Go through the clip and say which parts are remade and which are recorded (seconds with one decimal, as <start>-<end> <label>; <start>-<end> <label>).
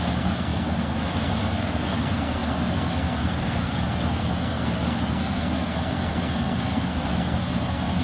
0.0-8.0 remade